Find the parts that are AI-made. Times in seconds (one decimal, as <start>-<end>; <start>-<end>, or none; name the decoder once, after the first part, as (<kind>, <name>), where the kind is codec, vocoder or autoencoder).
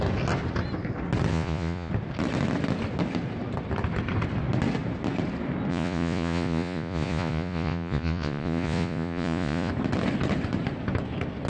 1.3-1.9 (vocoder, Vocos); 5.7-9.7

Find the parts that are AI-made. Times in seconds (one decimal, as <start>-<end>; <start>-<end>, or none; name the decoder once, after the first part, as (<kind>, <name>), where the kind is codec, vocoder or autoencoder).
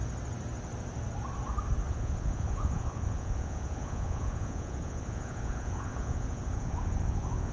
1.9-7.5 (vocoder, Vocos)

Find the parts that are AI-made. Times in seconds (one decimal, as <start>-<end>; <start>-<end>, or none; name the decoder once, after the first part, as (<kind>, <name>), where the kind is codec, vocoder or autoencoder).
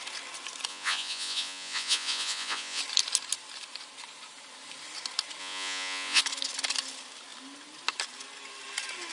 0.7-2.8 (vocoder, Vocos); 5.4-6.2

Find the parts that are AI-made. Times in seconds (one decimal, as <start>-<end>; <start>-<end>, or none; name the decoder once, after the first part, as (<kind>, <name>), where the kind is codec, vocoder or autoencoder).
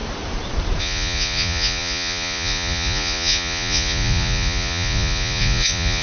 0.8-6.0 (vocoder, Vocos)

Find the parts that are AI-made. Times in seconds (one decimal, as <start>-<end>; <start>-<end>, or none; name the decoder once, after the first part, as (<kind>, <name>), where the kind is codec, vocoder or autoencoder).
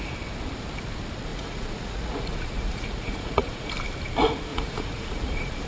1.3-3.7 (vocoder, Vocos); 4.5-5.7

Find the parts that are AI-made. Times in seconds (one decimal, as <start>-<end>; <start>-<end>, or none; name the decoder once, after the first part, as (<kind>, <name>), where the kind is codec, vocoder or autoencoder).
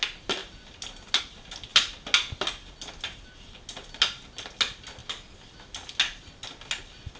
none